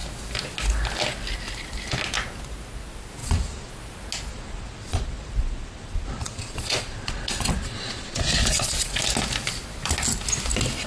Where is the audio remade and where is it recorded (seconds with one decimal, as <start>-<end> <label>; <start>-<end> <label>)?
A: 0.0-3.2 recorded; 3.2-3.7 remade; 3.7-4.3 recorded; 4.3-9.0 remade; 9.0-10.9 recorded